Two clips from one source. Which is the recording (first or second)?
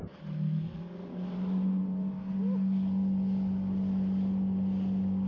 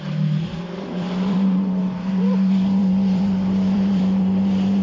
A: first